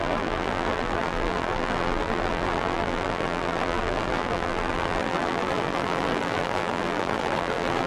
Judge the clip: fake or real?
fake